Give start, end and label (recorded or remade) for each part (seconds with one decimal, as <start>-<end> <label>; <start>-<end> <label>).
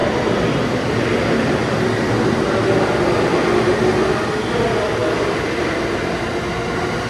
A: 0.0-1.0 remade; 1.0-5.0 recorded; 5.0-5.8 remade; 5.8-7.1 recorded